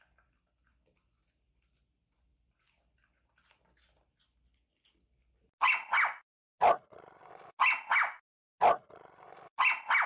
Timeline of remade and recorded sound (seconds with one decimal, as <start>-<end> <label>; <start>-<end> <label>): 0.0-10.1 recorded